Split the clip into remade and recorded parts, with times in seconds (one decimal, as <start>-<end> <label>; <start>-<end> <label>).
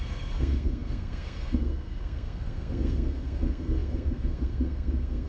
0.0-5.3 remade